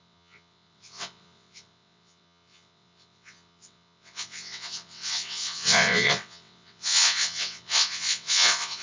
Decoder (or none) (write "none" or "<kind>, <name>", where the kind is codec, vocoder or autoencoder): vocoder, WaveNeXt